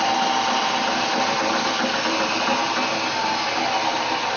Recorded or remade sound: recorded